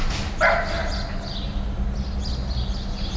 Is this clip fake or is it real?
real